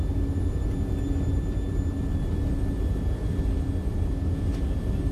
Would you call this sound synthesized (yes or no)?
no